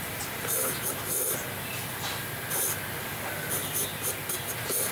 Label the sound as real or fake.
real